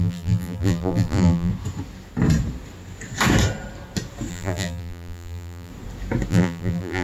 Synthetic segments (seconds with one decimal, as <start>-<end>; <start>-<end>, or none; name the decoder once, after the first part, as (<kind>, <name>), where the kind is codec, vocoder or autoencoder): 0.0-1.5 (vocoder, BigVGAN v2); 4.3-5.7; 6.3-7.0